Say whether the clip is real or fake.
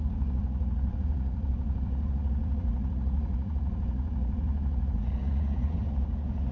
fake